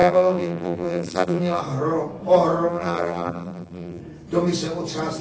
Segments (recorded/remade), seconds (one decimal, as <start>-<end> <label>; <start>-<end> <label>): 0.0-1.6 remade; 1.6-2.7 recorded; 2.7-4.0 remade; 4.0-5.2 recorded